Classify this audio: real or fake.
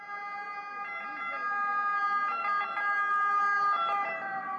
real